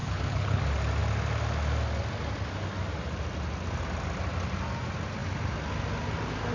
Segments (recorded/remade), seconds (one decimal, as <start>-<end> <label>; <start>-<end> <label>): 0.0-0.6 remade; 0.6-6.5 recorded